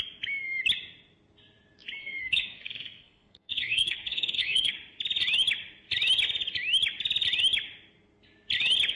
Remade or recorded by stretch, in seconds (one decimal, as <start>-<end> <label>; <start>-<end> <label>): 0.0-2.0 recorded; 2.0-4.7 remade; 4.7-9.0 recorded